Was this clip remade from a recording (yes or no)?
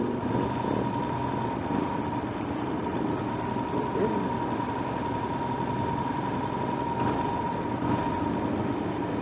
no